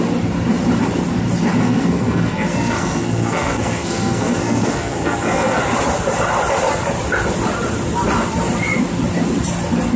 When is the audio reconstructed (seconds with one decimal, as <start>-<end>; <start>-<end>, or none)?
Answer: 1.6-5.6